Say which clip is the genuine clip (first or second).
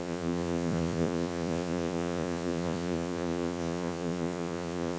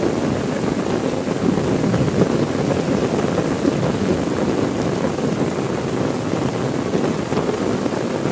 second